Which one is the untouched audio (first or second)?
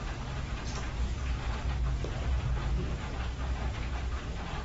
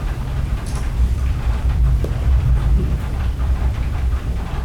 first